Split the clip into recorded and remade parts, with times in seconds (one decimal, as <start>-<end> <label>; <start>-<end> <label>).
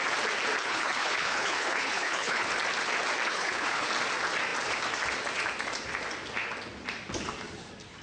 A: 0.0-0.6 recorded; 0.6-2.5 remade; 2.5-3.3 recorded; 3.3-3.9 remade; 3.9-8.0 recorded